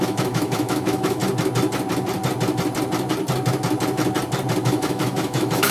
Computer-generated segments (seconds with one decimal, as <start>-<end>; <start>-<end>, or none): 0.0-1.2; 4.6-5.7